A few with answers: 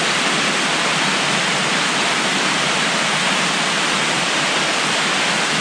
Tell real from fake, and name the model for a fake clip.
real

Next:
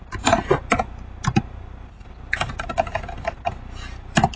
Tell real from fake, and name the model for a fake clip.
real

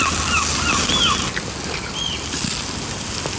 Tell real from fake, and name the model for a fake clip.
real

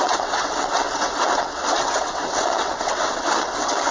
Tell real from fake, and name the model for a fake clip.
fake, vocoder, WaveNeXt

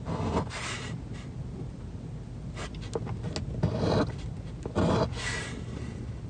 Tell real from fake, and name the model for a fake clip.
real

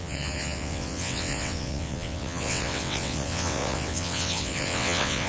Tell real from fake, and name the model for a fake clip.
fake, vocoder, WaveNeXt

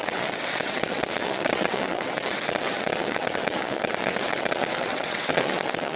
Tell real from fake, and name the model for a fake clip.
fake, vocoder, WaveNeXt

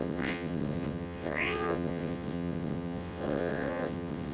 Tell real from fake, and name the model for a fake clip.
fake, vocoder, WaveNeXt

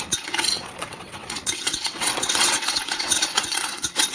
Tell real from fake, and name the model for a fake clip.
fake, vocoder, WaveNeXt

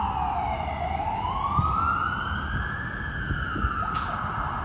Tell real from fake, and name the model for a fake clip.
real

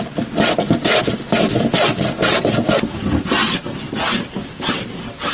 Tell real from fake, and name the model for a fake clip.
real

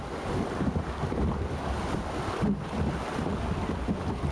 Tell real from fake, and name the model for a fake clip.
real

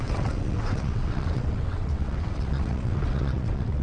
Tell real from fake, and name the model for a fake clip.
fake, vocoder, WaveNeXt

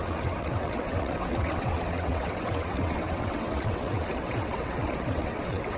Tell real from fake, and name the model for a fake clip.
fake, vocoder, WaveNeXt